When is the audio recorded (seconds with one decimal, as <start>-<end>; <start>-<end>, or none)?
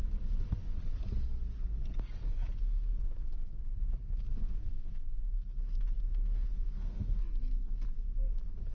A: 0.0-4.6; 5.3-6.1; 7.2-8.7